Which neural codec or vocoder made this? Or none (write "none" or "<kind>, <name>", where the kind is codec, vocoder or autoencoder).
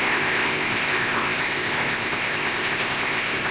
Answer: codec, ZipCodec